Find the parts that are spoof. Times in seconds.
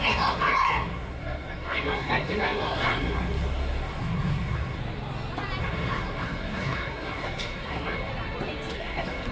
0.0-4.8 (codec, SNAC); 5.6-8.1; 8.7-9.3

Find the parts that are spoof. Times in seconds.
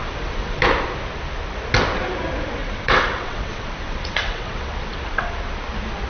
0.0-0.6 (vocoder, WaveNeXt); 2.6-5.3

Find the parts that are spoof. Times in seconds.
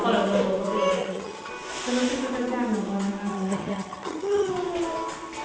1.0-1.5 (vocoder, HiFi-GAN); 3.3-4.5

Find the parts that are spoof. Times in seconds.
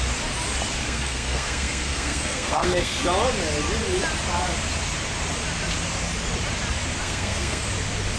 0.8-3.0 (codec, SNAC); 7.0-7.6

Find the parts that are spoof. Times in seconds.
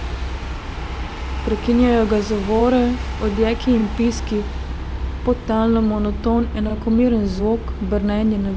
none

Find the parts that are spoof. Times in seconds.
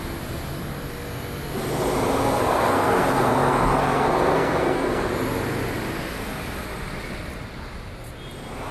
2.2-5.1 (codec, SNAC)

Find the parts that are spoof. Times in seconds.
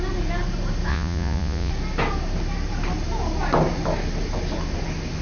0.9-1.7 (vocoder, Vocos)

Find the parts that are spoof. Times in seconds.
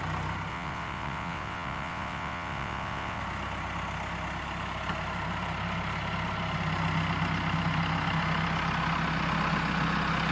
0.5-3.2 (vocoder, WaveNeXt)